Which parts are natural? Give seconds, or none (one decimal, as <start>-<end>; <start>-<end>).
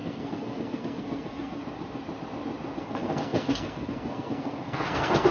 1.6-2.8